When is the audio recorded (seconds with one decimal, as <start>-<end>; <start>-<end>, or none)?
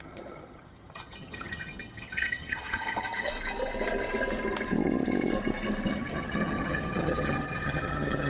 3.3-5.9